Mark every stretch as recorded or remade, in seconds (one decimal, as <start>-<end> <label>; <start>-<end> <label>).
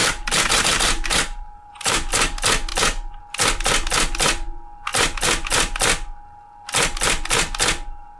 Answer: 0.0-2.1 remade; 2.1-8.2 recorded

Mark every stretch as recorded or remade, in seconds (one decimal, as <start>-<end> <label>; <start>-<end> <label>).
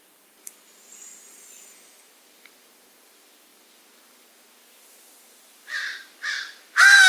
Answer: 0.0-7.1 remade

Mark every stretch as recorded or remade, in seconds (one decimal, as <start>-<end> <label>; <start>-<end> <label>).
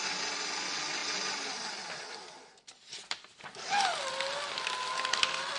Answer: 0.0-1.0 recorded; 1.0-3.4 remade; 3.4-5.6 recorded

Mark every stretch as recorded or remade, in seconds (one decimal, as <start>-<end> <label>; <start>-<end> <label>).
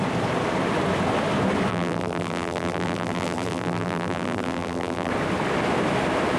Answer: 0.0-1.7 recorded; 1.7-5.1 remade; 5.1-6.4 recorded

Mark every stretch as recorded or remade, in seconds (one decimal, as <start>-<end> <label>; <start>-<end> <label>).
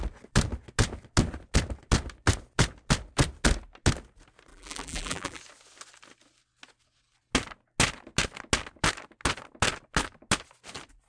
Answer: 0.0-4.5 recorded; 4.5-5.4 remade; 5.4-11.1 recorded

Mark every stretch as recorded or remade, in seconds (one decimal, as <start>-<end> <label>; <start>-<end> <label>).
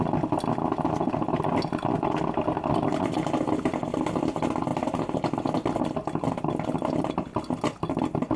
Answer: 0.0-8.4 recorded